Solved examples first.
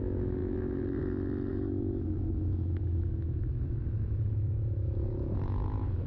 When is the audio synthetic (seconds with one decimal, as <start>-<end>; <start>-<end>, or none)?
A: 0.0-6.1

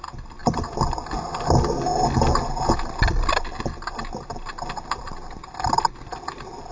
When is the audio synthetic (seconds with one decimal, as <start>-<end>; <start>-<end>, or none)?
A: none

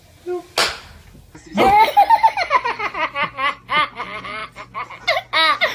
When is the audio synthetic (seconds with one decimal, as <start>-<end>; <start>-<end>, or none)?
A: none